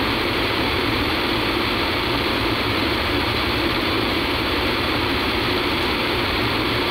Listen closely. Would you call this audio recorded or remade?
remade